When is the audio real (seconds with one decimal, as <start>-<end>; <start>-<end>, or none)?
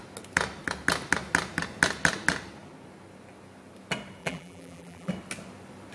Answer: 0.0-4.2; 5.1-5.9